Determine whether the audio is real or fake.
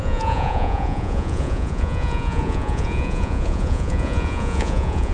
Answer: fake